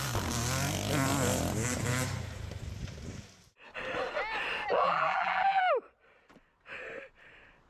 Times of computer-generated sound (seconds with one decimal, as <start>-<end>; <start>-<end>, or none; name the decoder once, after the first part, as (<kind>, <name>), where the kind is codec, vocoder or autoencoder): 4.8-5.6 (vocoder, BigVGAN v2)